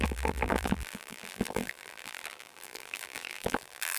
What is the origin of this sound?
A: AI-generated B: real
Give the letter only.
A